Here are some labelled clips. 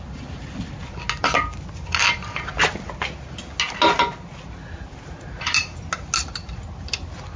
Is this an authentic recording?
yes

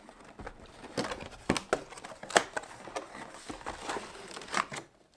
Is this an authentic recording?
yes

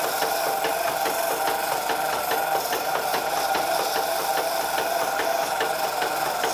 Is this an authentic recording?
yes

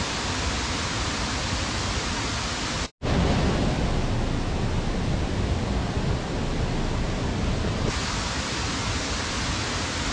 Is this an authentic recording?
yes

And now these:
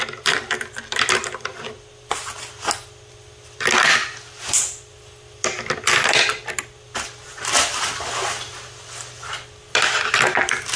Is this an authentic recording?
yes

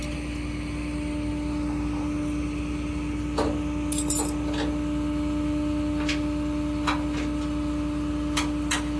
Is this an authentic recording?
yes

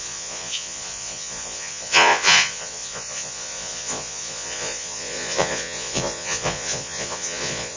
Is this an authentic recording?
no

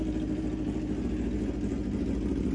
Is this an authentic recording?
yes